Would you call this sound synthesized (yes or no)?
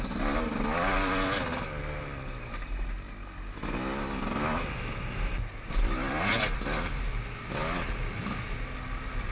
no